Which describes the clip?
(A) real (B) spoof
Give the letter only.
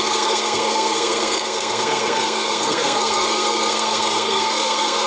B